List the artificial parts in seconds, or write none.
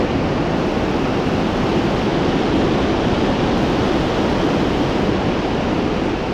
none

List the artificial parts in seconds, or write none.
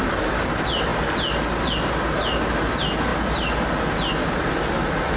none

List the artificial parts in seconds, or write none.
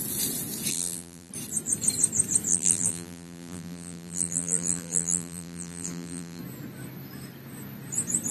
0.7-1.3 (vocoder, BigVGAN v2); 2.5-6.4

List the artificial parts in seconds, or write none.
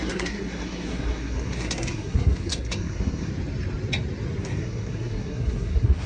0.0-3.3 (codec, SNAC); 4.4-6.1